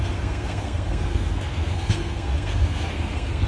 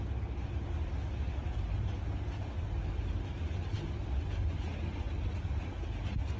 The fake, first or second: first